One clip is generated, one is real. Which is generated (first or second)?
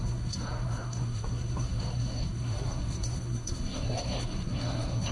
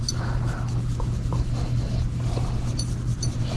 first